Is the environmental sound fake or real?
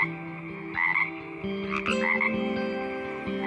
real